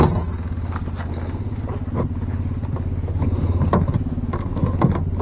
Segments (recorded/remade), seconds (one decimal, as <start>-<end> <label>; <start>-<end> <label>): 0.0-5.2 recorded